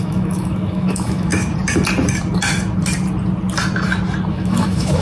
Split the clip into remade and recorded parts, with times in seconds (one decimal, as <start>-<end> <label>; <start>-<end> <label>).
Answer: 0.0-1.3 remade; 1.3-4.3 recorded; 4.3-5.0 remade